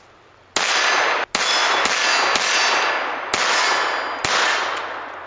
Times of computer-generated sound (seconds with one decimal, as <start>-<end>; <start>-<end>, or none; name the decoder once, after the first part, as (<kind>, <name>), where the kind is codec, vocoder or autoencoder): none